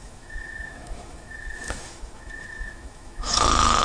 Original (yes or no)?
no